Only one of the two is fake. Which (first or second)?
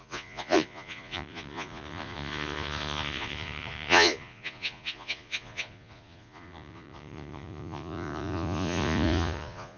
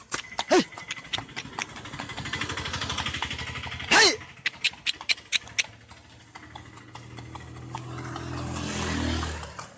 first